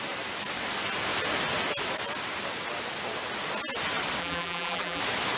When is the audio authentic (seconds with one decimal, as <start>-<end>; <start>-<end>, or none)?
0.0-4.2; 5.0-5.4